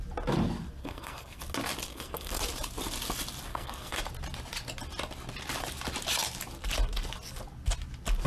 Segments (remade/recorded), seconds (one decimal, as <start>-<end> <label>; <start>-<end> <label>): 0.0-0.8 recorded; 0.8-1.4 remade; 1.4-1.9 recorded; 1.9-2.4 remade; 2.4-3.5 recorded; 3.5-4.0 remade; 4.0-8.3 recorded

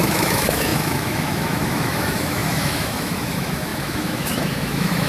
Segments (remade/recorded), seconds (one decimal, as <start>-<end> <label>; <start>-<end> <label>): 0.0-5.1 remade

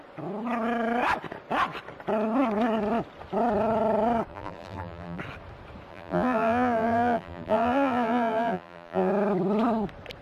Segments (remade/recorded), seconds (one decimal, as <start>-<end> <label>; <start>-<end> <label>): 0.0-4.3 recorded; 4.3-5.2 remade; 5.2-5.9 recorded; 5.9-9.1 remade; 9.1-10.2 recorded

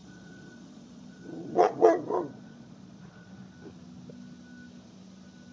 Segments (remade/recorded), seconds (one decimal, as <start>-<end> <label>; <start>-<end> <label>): 0.0-3.3 remade; 3.3-5.5 recorded